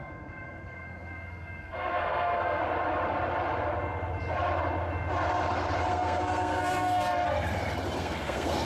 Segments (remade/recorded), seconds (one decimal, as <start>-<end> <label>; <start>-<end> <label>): 0.0-2.6 remade; 2.6-5.9 recorded; 5.9-7.1 remade; 7.1-8.0 recorded; 8.0-8.7 remade